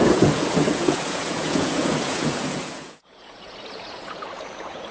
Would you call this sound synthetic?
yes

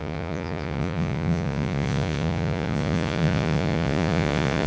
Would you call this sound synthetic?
yes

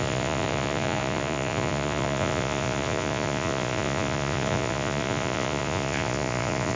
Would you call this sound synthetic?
yes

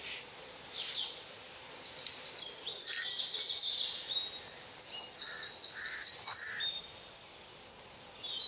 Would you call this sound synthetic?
no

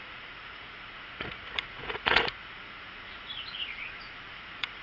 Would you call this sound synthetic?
yes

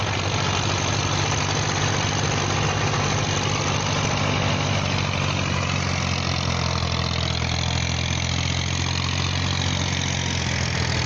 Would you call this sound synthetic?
no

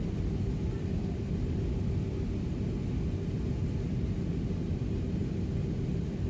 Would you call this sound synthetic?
no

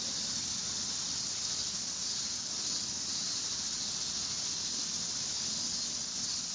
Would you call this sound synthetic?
no